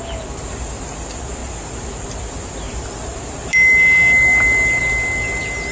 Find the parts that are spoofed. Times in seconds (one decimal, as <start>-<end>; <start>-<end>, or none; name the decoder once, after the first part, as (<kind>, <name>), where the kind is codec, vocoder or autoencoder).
none